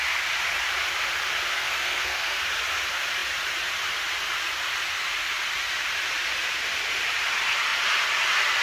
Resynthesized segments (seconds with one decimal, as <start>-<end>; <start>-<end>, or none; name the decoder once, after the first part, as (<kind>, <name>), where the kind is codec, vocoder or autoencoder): 1.5-2.4 (codec, SNAC)